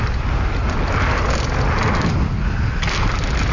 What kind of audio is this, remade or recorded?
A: recorded